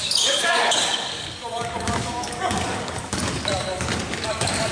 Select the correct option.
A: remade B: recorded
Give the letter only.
A